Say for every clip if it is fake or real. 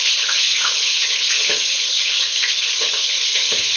fake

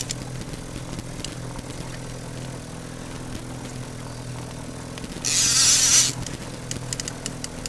real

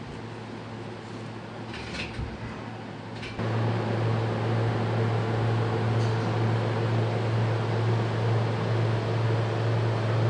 real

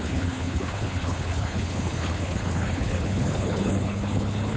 fake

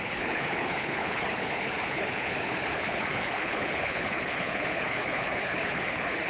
fake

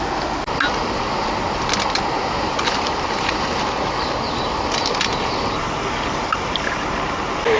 real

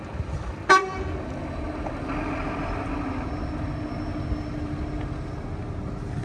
real